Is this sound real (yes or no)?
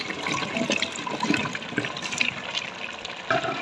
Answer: yes